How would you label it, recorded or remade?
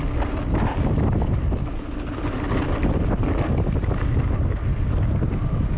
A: recorded